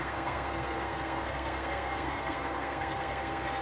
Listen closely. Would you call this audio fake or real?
fake